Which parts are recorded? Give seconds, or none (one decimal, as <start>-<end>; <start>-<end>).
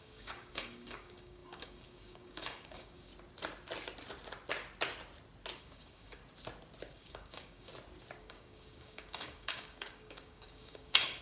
3.1-5.6; 6.2-6.9; 7.7-8.2